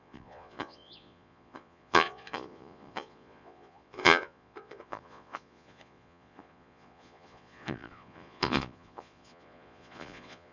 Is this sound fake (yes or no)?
yes